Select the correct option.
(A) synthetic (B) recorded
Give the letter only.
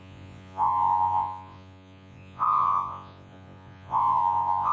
A